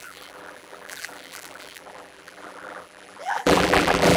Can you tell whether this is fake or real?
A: fake